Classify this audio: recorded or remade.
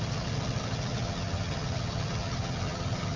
remade